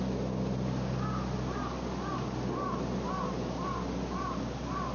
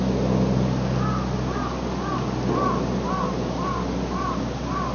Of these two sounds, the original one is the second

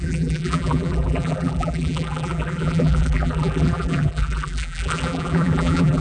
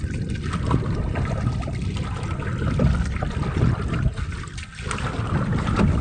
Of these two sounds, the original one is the second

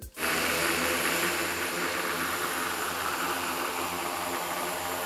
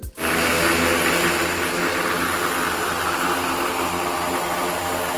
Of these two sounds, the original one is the second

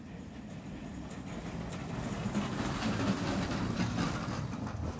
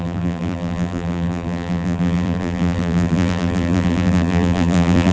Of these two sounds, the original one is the first